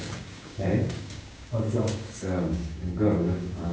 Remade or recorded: remade